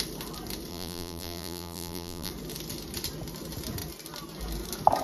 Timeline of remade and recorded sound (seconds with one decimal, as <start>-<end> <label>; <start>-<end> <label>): 0.0-0.7 recorded; 0.7-2.3 remade; 2.3-5.0 recorded